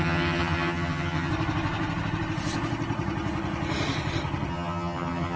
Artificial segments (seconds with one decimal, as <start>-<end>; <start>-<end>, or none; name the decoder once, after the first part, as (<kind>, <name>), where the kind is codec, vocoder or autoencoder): 0.0-1.3 (vocoder, HiFi-GAN); 4.5-5.4